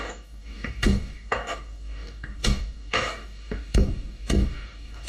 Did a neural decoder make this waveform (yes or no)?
yes